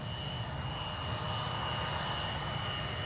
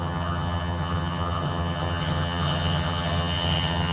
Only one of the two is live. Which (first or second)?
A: first